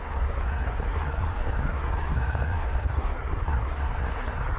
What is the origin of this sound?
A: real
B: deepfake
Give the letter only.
B